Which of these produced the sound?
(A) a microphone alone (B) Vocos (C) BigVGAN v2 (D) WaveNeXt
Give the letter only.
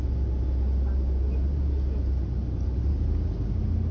A